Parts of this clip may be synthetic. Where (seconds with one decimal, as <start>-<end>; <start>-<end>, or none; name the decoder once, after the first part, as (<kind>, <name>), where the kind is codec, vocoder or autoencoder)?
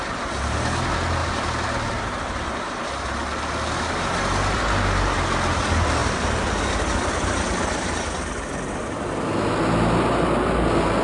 none